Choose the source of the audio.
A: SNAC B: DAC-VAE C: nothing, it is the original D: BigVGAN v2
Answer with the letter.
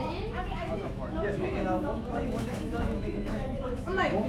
B